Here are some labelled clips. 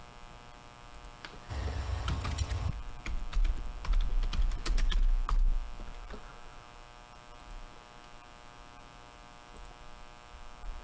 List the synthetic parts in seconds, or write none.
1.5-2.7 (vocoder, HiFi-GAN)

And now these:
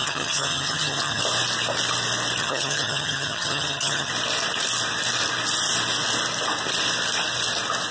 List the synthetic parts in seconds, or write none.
0.0-1.2 (vocoder, HiFi-GAN); 2.4-4.1

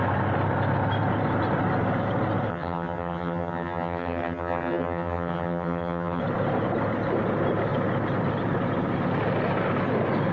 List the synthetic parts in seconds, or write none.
2.5-6.2 (vocoder, HiFi-GAN)

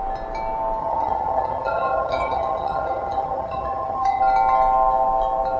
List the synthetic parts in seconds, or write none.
0.8-4.2 (vocoder, HiFi-GAN)

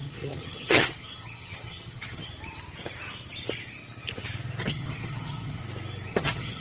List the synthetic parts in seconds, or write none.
0.0-2.3 (vocoder, HiFi-GAN); 4.7-5.6; 6.1-6.6

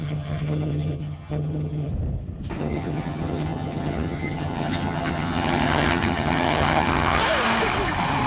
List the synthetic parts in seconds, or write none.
0.0-1.9 (vocoder, HiFi-GAN); 2.6-7.2

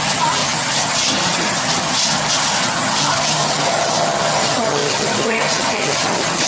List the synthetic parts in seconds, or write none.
0.0-6.5 (vocoder, HiFi-GAN)